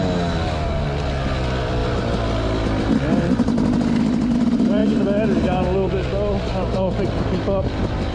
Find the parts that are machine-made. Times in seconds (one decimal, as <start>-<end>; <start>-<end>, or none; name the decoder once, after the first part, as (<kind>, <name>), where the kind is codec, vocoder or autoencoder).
none